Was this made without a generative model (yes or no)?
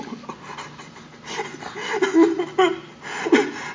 yes